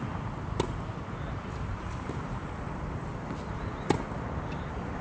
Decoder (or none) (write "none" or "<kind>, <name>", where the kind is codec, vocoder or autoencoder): none